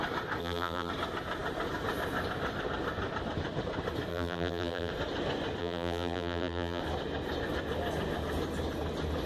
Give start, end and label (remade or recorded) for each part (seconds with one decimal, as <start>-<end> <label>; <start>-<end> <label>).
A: 0.0-0.4 recorded; 0.4-0.9 remade; 0.9-4.1 recorded; 4.1-4.9 remade; 4.9-5.6 recorded; 5.6-6.8 remade; 6.8-9.3 recorded